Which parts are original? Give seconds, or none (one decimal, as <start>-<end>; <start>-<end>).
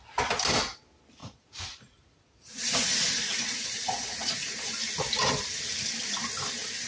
0.0-1.2; 4.7-6.9